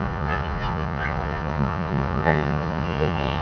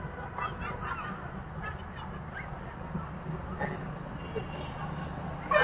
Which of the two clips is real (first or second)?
second